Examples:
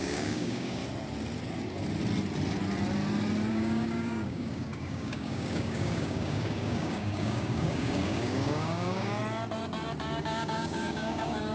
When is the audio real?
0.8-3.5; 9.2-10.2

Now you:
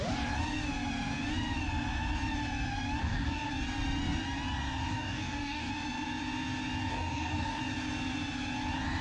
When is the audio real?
0.0-3.0; 3.5-4.9; 5.7-6.9; 7.6-9.0

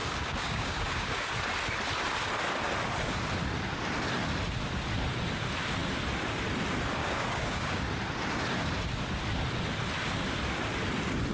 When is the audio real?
1.3-7.0; 7.8-11.3

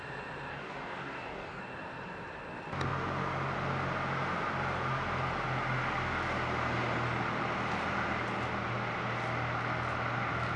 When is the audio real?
0.0-0.5; 1.6-10.6

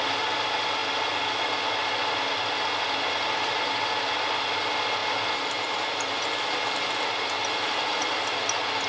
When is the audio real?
0.0-8.9

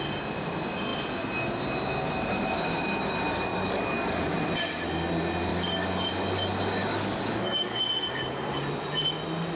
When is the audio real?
0.0-3.5; 4.2-5.5; 6.1-6.8; 7.8-9.6

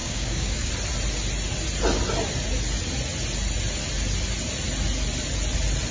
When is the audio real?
0.7-5.9

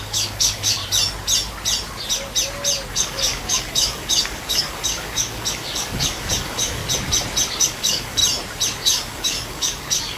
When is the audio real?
0.8-2.9; 6.8-7.6; 8.2-8.8